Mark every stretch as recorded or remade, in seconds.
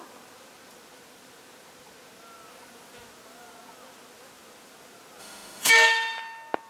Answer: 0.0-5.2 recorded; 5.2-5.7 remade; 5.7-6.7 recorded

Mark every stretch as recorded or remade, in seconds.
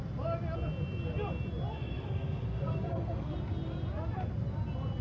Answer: 0.0-1.8 recorded; 1.8-3.3 remade; 3.3-5.0 recorded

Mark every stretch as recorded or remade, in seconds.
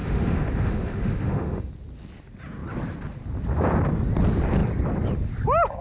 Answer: 0.0-1.7 remade; 1.7-5.8 recorded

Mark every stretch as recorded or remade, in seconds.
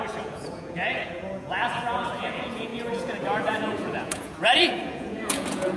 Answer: 0.0-5.8 remade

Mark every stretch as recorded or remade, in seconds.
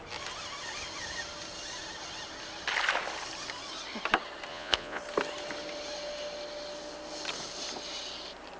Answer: 0.0-4.5 recorded; 4.5-5.0 remade; 5.0-8.6 recorded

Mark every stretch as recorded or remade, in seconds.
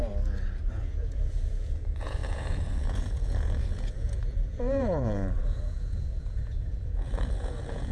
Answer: 0.0-0.7 recorded; 0.7-7.9 remade